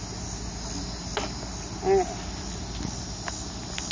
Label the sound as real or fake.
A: real